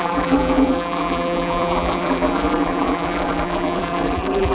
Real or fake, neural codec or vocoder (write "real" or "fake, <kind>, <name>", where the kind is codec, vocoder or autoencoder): fake, vocoder, BigVGAN v2